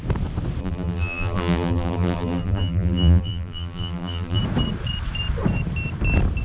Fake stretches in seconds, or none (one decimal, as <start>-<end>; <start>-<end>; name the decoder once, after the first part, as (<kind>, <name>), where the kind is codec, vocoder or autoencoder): 0.6-4.4 (vocoder, BigVGAN v2)